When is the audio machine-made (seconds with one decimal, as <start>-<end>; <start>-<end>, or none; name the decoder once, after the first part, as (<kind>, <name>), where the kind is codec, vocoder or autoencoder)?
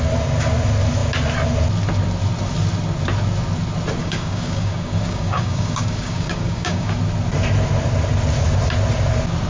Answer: 4.0-7.0 (codec, DAC)